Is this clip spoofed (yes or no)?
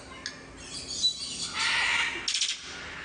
no